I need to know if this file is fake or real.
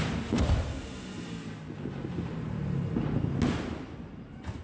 real